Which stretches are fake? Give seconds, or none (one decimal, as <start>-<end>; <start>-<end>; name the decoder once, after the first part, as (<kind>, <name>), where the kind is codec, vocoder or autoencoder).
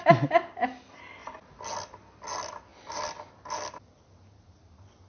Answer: none